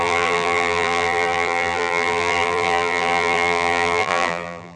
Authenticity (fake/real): fake